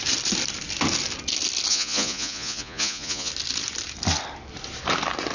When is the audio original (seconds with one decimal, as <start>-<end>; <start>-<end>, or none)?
0.0-1.7; 3.3-5.3